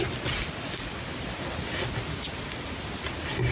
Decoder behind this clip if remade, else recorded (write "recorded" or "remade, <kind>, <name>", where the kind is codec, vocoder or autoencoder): recorded